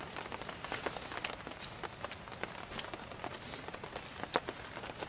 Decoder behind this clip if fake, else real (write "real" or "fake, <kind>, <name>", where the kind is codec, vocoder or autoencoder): real